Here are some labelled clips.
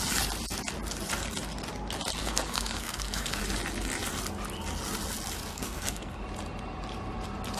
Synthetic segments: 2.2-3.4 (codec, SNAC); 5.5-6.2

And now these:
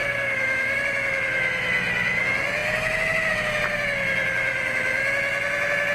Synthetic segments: 0.0-0.8 (autoencoder, DAC-VAE)

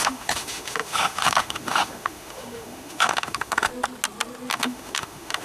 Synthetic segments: 0.0-3.7 (autoencoder, DAC-VAE); 4.5-5.4

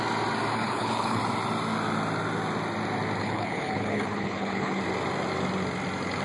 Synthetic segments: 0.5-1.2 (codec, HILCodec); 3.2-4.8

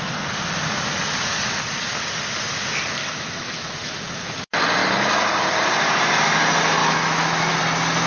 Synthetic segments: 3.0-4.0 (autoencoder, DAC-VAE); 6.8-7.6